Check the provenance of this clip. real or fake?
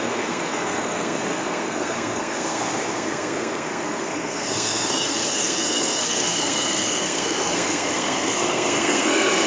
fake